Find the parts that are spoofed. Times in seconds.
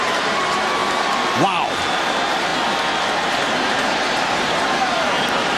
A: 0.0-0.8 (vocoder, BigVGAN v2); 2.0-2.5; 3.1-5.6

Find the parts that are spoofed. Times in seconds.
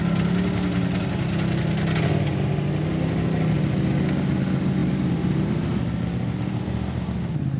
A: 4.8-5.8 (vocoder, BigVGAN v2)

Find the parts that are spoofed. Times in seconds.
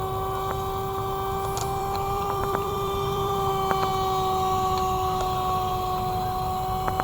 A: 1.6-3.5 (vocoder, BigVGAN v2)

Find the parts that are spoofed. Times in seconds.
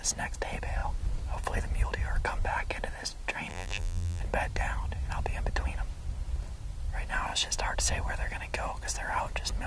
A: 3.5-4.2 (vocoder, BigVGAN v2)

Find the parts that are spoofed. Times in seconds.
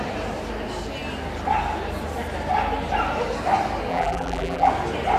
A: 3.9-4.7 (vocoder, BigVGAN v2)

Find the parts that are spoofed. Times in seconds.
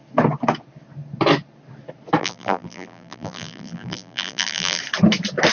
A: 2.2-4.8 (vocoder, BigVGAN v2)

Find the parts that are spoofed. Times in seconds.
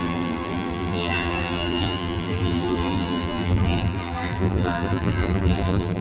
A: 0.0-6.0 (vocoder, BigVGAN v2)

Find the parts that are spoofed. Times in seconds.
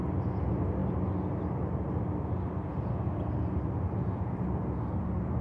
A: none